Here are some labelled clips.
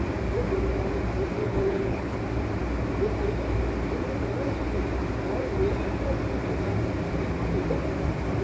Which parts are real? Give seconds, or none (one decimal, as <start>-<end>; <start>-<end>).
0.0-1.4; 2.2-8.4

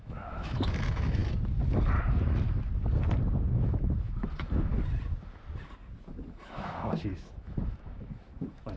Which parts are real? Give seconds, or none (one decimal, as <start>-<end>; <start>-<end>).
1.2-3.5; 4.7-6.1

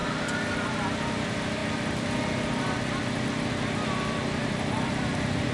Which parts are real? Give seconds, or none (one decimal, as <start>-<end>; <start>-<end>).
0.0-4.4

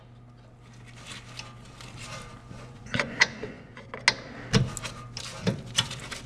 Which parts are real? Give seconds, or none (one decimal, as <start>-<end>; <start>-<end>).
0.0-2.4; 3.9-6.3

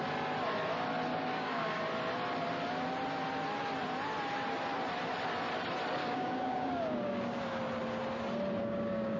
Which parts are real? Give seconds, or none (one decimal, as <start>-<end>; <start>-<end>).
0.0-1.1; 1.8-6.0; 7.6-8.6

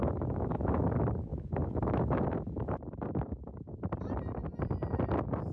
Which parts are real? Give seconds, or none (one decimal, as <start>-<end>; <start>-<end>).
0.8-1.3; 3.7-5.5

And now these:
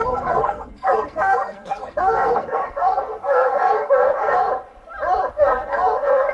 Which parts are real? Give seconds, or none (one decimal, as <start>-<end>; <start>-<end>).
4.5-5.3